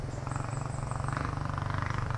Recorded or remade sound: remade